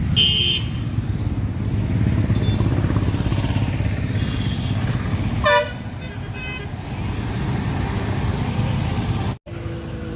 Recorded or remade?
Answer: recorded